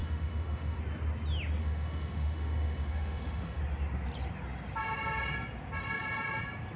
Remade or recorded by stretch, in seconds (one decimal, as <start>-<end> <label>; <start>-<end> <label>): 0.0-0.8 remade; 0.8-1.6 recorded; 1.6-3.6 remade; 3.6-6.8 recorded